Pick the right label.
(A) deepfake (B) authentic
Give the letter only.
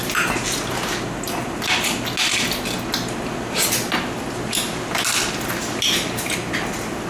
B